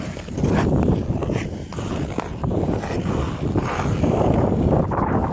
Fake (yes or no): no